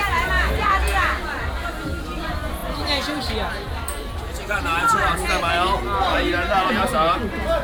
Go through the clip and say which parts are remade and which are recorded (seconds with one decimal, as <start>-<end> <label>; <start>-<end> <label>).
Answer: 0.0-7.6 recorded